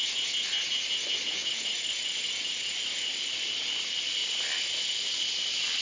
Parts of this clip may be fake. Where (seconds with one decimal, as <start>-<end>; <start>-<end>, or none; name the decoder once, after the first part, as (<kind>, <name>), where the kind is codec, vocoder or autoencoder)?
none

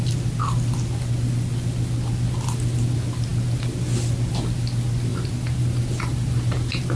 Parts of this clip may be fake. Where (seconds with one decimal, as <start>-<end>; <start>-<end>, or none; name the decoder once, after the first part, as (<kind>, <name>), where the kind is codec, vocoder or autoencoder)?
5.1-7.0 (vocoder, BigVGAN v2)

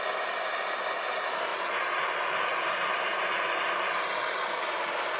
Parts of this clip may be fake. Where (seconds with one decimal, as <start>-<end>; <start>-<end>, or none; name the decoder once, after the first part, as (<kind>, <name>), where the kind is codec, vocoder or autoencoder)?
none